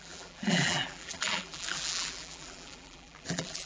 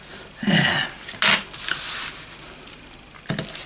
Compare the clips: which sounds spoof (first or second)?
first